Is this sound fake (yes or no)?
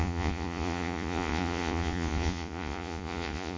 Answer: yes